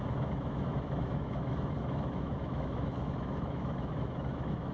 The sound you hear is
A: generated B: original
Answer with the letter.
A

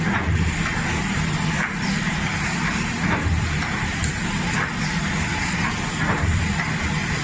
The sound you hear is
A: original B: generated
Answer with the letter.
A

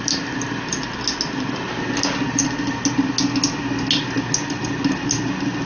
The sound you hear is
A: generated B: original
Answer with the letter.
B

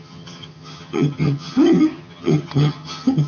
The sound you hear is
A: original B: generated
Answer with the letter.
B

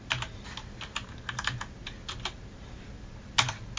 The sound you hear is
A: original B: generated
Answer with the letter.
A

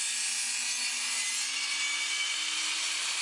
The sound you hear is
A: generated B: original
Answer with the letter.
B